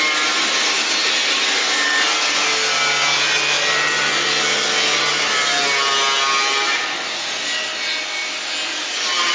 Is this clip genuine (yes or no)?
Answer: yes